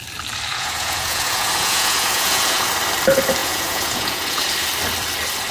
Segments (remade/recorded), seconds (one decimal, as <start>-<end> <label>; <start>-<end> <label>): 0.0-0.5 recorded; 0.5-2.7 remade; 2.7-3.4 recorded; 3.4-4.4 remade; 4.4-5.5 recorded